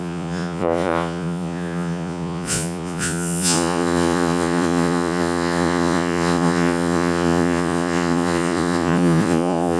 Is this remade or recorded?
remade